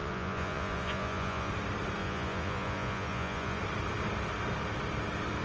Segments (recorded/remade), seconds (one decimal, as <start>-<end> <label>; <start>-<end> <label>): 0.0-1.5 remade; 1.5-2.0 recorded; 2.0-3.6 remade; 3.6-5.4 recorded